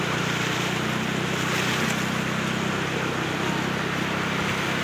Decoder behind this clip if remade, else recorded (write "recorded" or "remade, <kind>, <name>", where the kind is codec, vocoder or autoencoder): recorded